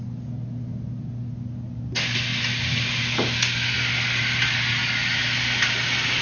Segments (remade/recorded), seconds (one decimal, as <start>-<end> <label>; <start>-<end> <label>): 0.0-6.2 recorded